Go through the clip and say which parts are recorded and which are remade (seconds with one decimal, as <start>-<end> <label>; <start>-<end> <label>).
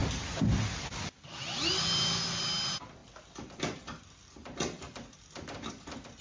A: 0.0-3.0 recorded; 3.0-5.7 remade; 5.7-6.2 recorded